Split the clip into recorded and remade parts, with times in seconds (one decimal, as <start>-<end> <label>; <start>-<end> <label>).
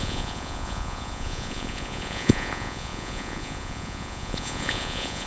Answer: 0.0-5.3 remade